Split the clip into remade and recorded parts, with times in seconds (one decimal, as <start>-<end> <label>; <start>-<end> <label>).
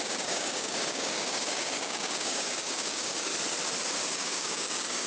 0.0-3.3 remade; 3.3-4.1 recorded; 4.1-5.1 remade